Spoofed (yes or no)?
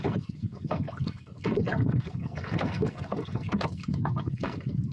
yes